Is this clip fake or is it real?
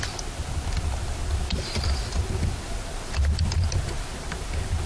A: real